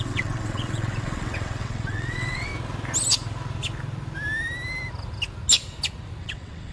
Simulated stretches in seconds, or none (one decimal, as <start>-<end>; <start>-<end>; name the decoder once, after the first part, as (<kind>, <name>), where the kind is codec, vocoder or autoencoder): 0.0-2.5 (vocoder, WaveNeXt); 6.2-6.7